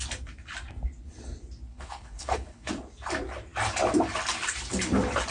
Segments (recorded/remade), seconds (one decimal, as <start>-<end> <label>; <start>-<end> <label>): 0.0-1.7 recorded; 1.7-2.7 remade; 2.7-5.3 recorded